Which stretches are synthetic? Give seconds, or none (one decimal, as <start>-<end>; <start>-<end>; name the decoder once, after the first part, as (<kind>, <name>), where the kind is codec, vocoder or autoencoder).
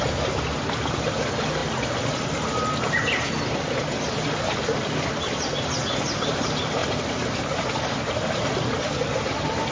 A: none